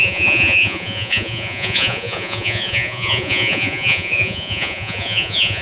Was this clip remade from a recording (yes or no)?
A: yes